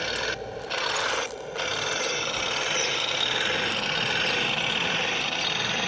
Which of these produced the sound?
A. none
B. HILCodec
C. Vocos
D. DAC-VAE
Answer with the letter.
A